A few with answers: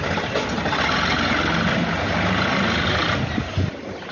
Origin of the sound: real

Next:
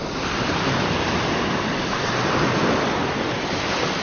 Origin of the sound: real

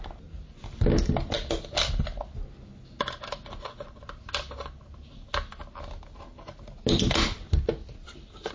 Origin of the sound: real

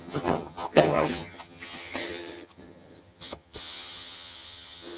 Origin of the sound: fake